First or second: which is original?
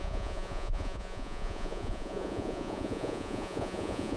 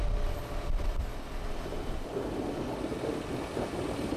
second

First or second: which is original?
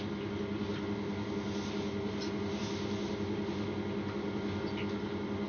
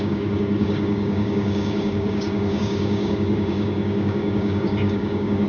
first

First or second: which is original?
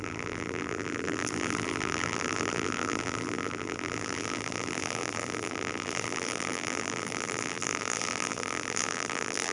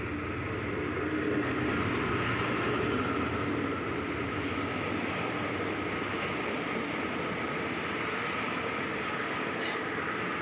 second